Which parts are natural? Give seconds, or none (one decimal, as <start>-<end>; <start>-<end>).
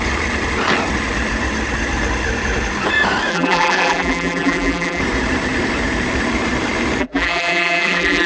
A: 0.0-3.3; 5.0-7.0